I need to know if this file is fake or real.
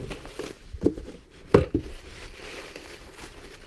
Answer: fake